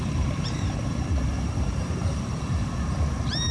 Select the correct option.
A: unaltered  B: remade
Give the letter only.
B